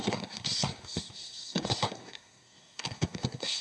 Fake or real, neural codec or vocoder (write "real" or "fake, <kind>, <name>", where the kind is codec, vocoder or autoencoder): fake, codec, SNAC